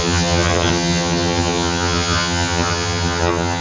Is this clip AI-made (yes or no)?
yes